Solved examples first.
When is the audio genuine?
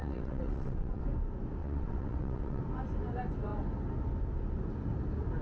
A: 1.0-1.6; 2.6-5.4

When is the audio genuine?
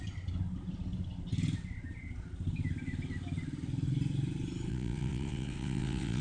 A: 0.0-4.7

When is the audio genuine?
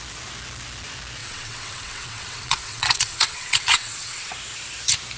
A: 0.0-1.2; 4.3-5.2